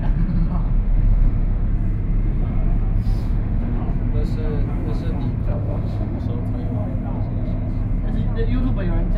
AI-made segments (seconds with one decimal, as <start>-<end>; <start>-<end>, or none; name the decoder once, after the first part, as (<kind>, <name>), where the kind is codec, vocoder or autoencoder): 0.6-1.7 (autoencoder, DAC-VAE); 3.2-3.8; 5.4-6.2